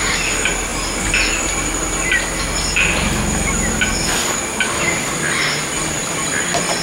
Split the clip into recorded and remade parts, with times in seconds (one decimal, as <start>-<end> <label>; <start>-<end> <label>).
0.0-6.8 recorded